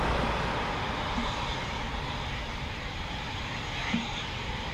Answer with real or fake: real